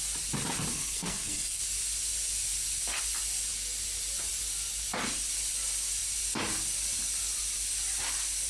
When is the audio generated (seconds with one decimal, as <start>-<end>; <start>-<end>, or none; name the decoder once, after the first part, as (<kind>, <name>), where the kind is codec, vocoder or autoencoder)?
0.7-1.6 (codec, SNAC)

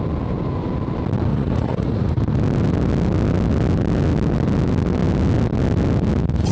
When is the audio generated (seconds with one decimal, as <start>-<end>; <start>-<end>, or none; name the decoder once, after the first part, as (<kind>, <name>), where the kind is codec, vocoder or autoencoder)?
1.3-2.2 (vocoder, Vocos)

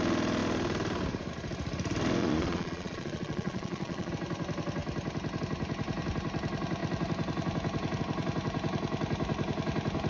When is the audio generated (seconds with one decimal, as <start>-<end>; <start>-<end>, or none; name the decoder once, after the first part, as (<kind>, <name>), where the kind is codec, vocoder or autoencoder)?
2.2-4.1 (vocoder, Vocos)

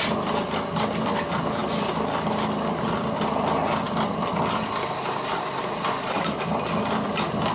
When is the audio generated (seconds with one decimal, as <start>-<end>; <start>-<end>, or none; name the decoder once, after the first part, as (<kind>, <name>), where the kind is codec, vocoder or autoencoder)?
none

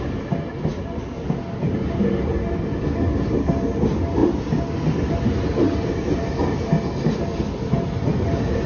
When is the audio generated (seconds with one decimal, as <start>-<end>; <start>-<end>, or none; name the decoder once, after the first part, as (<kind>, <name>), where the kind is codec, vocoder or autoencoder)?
none

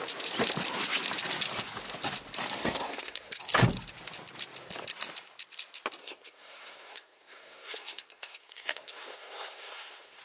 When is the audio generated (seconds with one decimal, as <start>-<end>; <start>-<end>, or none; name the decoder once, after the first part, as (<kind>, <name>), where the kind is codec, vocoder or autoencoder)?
2.6-3.4 (codec, SNAC); 6.0-10.2

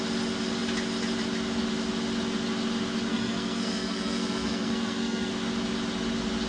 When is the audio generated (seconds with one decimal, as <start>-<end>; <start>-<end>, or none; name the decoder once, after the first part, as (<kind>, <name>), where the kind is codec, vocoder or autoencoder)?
3.1-5.3 (codec, SNAC)